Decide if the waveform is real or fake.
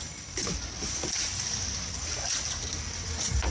real